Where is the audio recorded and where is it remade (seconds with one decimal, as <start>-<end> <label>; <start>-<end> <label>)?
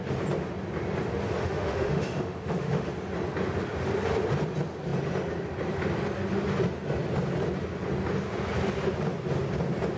0.0-1.4 recorded; 1.4-2.9 remade; 2.9-10.0 recorded